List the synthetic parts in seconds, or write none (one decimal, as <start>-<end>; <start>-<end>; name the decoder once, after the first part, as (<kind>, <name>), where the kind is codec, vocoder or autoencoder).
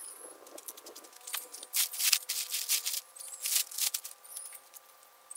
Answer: none